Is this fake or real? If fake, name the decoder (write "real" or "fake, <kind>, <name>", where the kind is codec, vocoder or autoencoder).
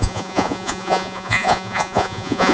fake, vocoder, Vocos